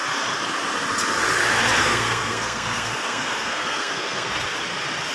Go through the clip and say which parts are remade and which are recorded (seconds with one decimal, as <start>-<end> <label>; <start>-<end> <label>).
0.0-1.8 recorded; 1.8-4.3 remade; 4.3-5.1 recorded